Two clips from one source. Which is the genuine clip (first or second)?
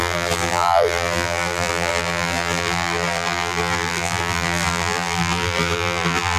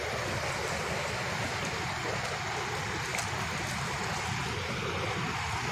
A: second